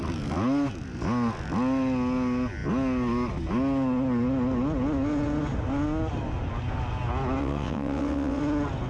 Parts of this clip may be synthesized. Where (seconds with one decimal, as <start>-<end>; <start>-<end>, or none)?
7.4-8.4